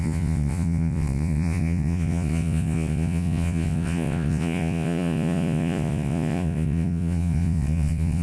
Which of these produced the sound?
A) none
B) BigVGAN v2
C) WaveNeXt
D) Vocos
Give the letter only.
D